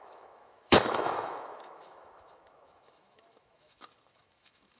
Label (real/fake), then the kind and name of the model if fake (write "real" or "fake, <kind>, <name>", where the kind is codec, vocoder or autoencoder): fake, autoencoder, DAC-VAE